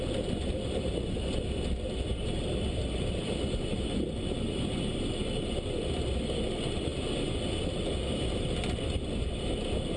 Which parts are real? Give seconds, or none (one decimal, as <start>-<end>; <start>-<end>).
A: 0.0-10.0

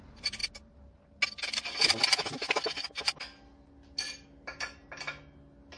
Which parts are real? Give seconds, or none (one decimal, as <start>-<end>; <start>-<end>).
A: 0.0-5.8

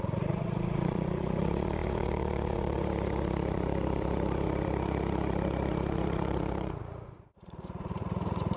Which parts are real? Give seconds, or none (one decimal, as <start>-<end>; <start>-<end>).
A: none

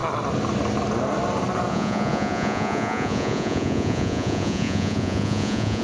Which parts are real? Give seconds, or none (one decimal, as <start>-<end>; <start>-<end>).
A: 0.0-1.7

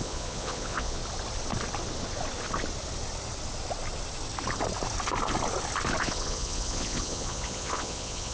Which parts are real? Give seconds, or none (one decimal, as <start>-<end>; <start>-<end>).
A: 1.0-6.0

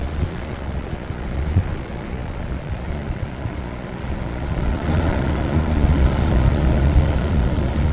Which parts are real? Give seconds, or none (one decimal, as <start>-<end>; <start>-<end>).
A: none

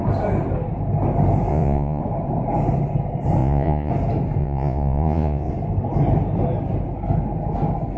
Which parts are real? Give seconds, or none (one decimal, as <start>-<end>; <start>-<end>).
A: 0.0-1.5; 2.0-3.4; 3.9-4.4; 5.5-8.0